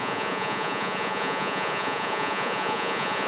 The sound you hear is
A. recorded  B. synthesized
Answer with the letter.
B